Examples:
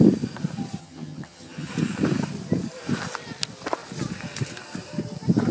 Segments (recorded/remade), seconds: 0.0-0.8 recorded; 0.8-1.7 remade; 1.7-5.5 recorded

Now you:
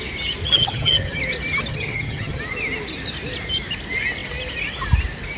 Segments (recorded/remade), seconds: 0.0-0.4 recorded; 0.4-1.2 remade; 1.2-1.7 recorded; 1.7-2.4 remade; 2.4-5.4 recorded

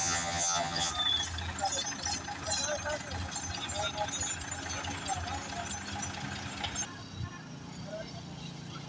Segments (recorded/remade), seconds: 0.0-0.9 remade; 0.9-8.9 recorded

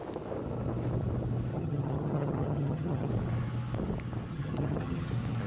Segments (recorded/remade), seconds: 0.0-1.5 recorded; 1.5-3.1 remade; 3.1-4.3 recorded; 4.3-5.1 remade; 5.1-5.5 recorded

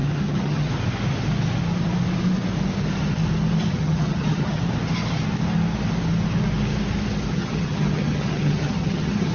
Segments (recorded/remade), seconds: 0.0-0.7 remade; 0.7-3.7 recorded; 3.7-4.6 remade; 4.6-7.3 recorded; 7.3-9.3 remade